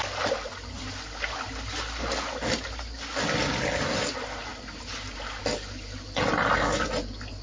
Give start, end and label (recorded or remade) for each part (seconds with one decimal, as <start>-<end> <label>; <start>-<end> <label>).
0.0-7.4 recorded